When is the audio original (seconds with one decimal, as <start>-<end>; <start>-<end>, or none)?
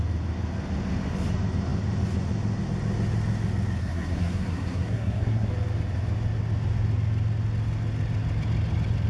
0.0-3.8; 5.5-9.1